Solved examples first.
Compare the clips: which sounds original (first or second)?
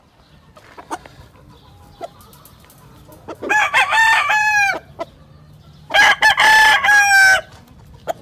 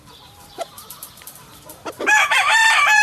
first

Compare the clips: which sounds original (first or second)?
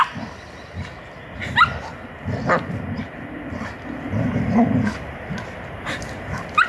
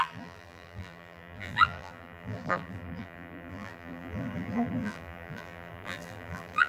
first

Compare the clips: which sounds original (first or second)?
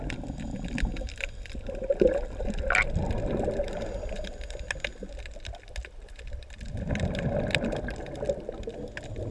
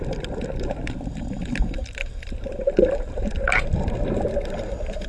first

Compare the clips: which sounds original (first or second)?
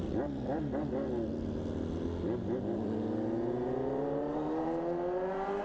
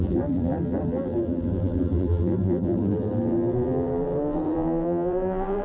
first